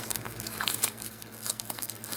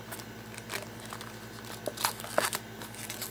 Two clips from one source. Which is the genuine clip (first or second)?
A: second